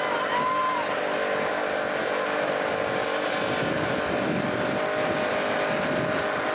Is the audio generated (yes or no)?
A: no